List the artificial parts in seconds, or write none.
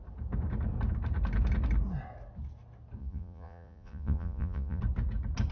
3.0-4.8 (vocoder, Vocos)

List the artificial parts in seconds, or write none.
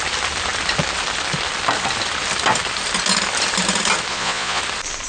4.1-4.6 (vocoder, Vocos)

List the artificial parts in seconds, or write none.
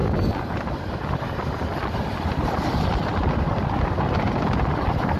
none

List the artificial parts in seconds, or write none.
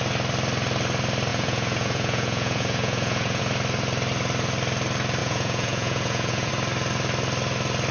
1.3-3.4 (vocoder, Vocos); 5.2-6.5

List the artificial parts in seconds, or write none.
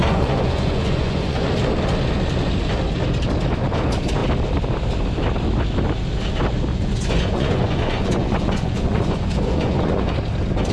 0.0-1.5 (vocoder, Vocos); 6.7-10.1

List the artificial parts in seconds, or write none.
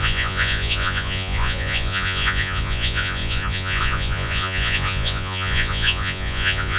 0.0-6.8 (vocoder, Vocos)